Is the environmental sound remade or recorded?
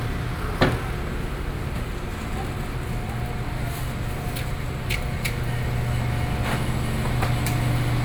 recorded